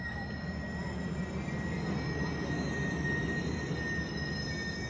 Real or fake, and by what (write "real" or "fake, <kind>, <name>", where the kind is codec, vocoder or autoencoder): real